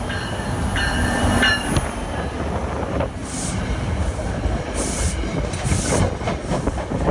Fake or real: real